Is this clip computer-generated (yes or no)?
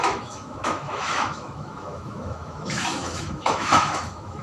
yes